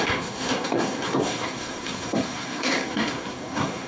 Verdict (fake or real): fake